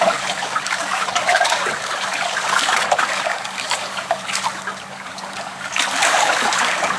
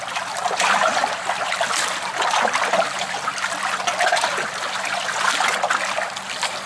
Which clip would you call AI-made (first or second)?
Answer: first